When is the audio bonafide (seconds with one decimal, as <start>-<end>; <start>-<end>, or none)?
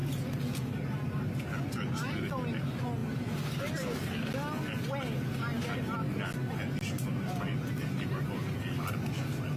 0.0-9.6